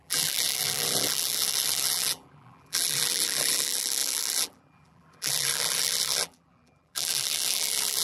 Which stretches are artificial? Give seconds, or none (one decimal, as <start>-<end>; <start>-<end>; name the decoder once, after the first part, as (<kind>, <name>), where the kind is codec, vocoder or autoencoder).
0.0-8.0 (vocoder, BigVGAN v2)